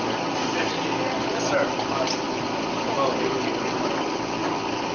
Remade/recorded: recorded